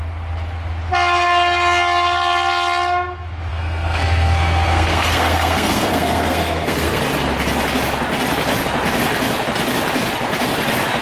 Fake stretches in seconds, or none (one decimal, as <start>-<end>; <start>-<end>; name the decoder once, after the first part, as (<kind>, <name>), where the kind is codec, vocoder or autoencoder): 3.5-7.0 (codec, SNAC)